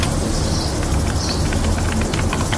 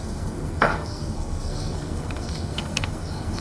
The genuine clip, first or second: first